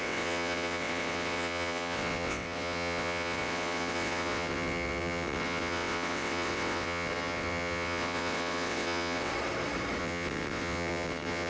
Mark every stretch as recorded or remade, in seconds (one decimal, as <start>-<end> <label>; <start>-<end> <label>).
0.0-9.3 remade; 9.3-10.0 recorded; 10.0-11.5 remade